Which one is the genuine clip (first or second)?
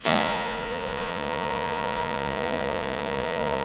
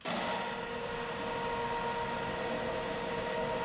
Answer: second